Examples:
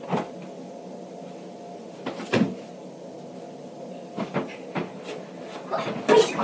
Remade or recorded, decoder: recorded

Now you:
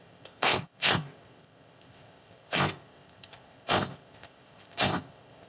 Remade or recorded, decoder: remade, codec, ZipCodec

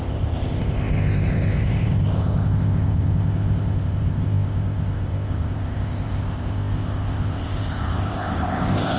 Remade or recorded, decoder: remade, codec, ZipCodec